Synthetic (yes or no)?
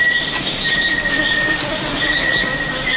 no